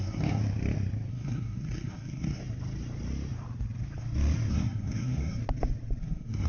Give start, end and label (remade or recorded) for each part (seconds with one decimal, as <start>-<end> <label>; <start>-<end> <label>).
0.0-0.4 remade; 0.4-1.1 recorded; 1.1-2.4 remade; 2.4-4.5 recorded; 4.5-5.4 remade; 5.4-6.0 recorded; 6.0-6.5 remade